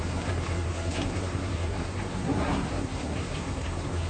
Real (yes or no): no